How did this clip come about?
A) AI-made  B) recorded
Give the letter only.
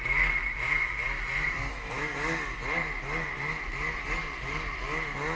B